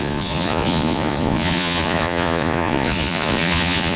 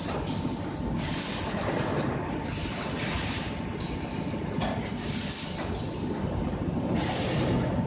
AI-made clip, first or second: first